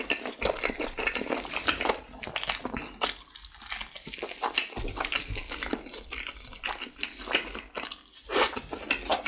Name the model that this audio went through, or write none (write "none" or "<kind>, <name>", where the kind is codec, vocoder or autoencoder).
none